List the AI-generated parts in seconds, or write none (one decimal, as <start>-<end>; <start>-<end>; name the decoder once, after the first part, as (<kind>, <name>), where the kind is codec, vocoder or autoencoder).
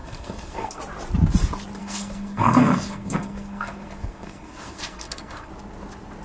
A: 0.0-0.8 (codec, SNAC); 1.8-5.5